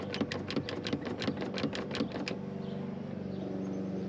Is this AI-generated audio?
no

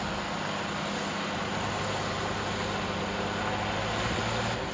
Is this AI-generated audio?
no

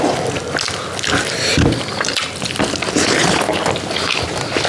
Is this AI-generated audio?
no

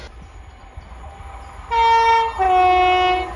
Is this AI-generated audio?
no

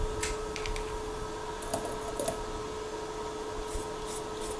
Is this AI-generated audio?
no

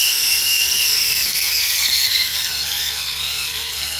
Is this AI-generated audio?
yes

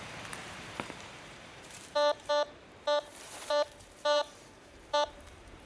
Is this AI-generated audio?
yes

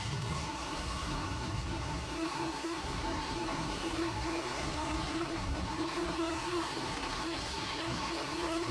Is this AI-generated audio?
yes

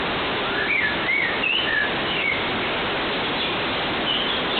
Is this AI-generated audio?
no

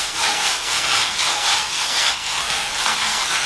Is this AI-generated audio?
yes